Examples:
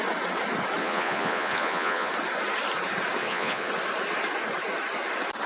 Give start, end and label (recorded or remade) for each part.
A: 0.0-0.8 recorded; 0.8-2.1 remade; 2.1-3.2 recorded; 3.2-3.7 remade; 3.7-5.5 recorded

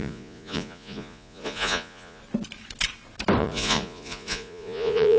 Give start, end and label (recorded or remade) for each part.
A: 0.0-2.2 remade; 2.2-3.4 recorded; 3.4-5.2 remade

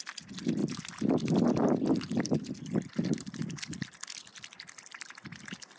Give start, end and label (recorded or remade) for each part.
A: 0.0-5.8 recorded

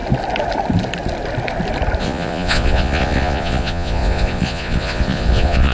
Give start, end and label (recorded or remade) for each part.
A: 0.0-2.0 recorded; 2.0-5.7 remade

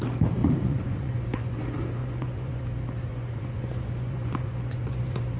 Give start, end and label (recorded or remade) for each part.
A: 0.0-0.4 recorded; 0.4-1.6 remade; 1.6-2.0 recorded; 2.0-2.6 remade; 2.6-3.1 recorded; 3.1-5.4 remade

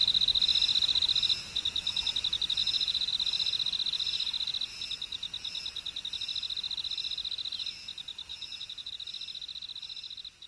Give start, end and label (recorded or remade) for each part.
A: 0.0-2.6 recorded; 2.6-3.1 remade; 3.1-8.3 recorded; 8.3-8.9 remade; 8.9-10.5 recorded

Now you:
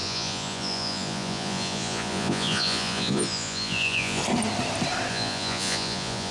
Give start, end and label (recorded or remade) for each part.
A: 0.0-4.2 remade; 4.2-5.1 recorded; 5.1-6.3 remade

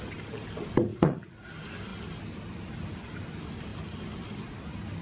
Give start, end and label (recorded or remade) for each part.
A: 0.0-0.9 recorded; 0.9-1.5 remade; 1.5-5.0 recorded